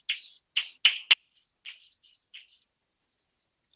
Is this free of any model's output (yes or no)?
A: yes